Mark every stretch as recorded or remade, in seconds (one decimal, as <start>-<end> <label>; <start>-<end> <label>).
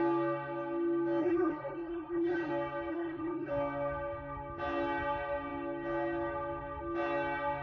0.0-1.2 recorded; 1.2-2.5 remade; 2.5-2.9 recorded; 2.9-3.5 remade; 3.5-7.6 recorded